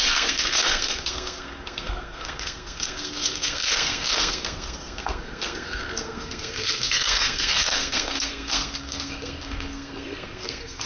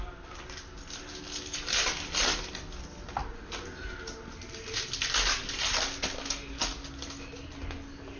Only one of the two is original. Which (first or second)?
second